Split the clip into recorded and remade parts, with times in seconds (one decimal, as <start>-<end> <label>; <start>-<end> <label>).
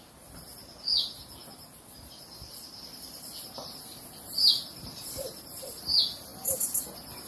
0.0-7.3 recorded